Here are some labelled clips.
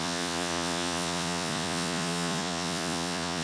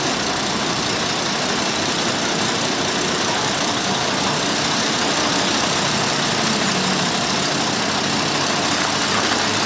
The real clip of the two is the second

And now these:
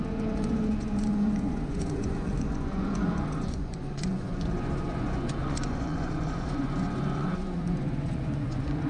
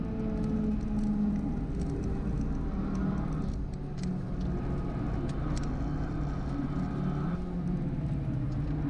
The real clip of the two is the second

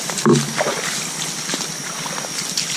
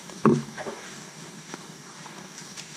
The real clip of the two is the first